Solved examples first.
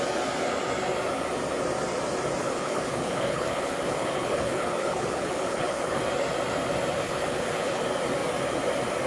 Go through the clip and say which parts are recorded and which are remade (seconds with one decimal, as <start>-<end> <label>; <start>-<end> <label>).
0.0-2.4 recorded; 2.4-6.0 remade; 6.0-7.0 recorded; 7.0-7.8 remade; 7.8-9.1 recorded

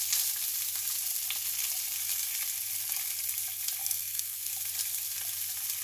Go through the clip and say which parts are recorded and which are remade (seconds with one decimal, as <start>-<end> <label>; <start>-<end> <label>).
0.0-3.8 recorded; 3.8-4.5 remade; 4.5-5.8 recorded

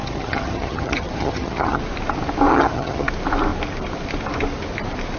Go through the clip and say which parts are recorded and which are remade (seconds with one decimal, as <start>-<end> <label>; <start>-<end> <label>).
0.0-1.8 remade; 1.8-2.5 recorded; 2.5-3.1 remade; 3.1-5.2 recorded